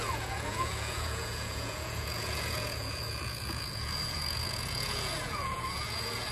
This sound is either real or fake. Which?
fake